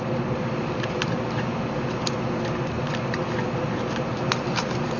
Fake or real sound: real